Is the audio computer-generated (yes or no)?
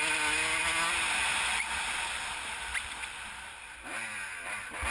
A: no